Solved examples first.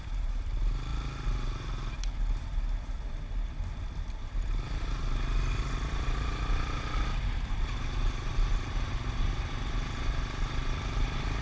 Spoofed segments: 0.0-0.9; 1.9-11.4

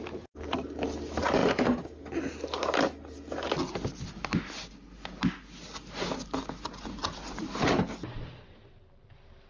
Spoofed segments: none

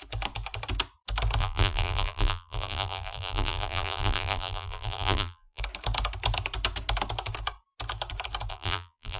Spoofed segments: 1.4-5.6; 8.5-9.2

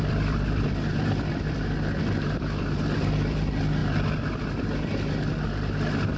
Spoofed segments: 0.0-3.8; 5.3-6.2

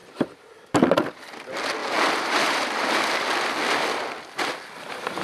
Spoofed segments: 1.8-3.0

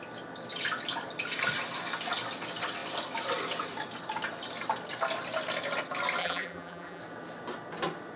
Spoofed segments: 6.2-7.0